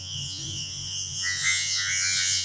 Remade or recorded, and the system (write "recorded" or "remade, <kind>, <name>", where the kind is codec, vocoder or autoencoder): remade, vocoder, Vocos